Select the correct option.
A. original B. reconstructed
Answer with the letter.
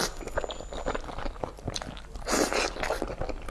A